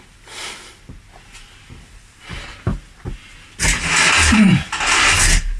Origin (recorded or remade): recorded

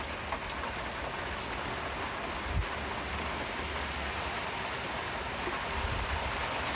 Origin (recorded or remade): recorded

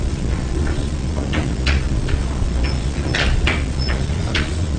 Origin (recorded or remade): remade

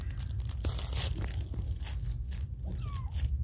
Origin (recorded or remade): recorded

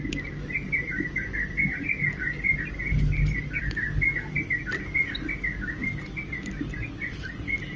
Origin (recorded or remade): recorded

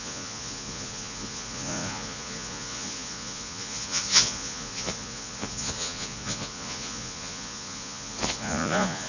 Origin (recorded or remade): remade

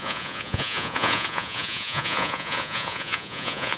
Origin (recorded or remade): remade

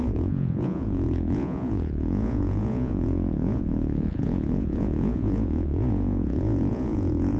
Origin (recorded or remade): remade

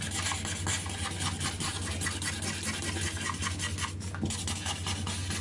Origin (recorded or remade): recorded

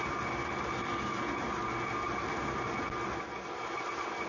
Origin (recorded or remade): recorded